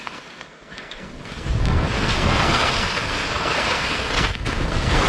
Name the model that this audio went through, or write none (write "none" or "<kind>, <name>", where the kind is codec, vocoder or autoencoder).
codec, SNAC